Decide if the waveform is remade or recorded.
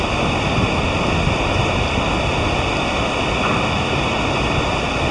recorded